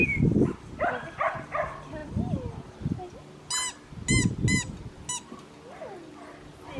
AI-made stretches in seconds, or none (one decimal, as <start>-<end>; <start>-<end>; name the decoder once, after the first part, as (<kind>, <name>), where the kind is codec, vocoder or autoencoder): none